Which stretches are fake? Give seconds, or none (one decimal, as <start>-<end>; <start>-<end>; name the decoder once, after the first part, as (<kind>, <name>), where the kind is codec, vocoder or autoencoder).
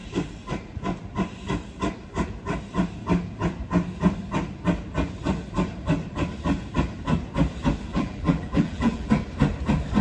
7.9-9.1 (vocoder, BigVGAN v2)